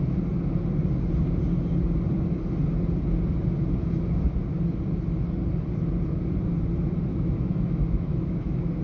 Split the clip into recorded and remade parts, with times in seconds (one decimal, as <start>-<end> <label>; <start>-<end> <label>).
0.0-7.1 recorded; 7.1-8.8 remade